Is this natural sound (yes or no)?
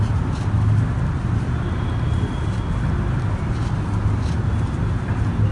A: yes